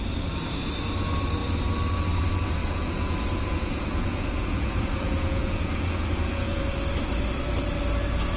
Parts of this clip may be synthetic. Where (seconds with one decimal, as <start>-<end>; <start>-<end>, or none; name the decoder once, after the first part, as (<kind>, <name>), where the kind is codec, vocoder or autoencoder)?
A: 2.6-6.6 (vocoder, Vocos)